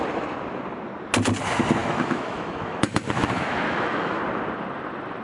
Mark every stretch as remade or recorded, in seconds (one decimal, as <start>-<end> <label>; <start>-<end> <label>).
0.0-1.8 recorded; 1.8-4.2 remade; 4.2-5.2 recorded